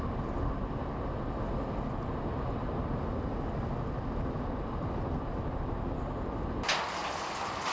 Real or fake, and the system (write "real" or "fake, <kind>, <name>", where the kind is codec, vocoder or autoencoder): real